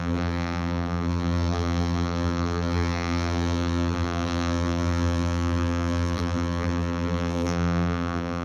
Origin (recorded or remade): remade